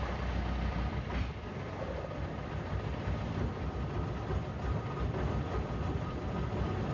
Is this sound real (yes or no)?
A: no